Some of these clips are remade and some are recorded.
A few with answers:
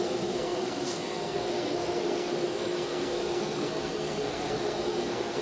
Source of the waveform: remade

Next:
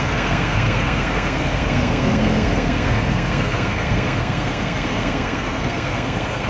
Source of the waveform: remade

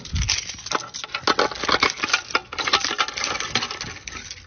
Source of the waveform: recorded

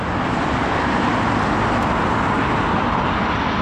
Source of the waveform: recorded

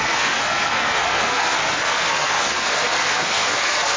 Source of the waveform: remade